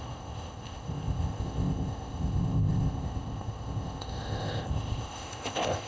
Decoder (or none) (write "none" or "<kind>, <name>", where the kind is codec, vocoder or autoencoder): codec, ZipCodec